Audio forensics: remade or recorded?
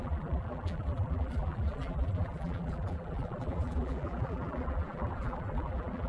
remade